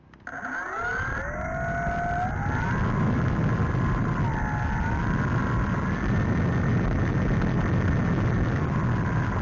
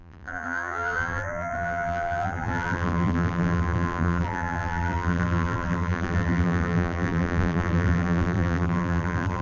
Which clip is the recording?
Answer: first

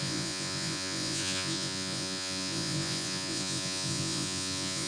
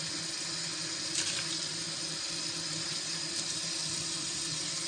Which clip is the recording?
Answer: second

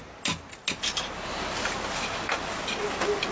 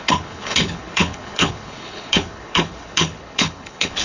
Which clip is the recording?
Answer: first